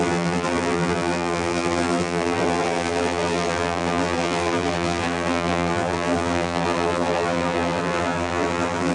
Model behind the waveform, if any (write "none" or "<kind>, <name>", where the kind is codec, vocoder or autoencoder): vocoder, BigVGAN v2